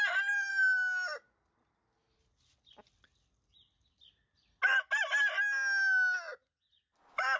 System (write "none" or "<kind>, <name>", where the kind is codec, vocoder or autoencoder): none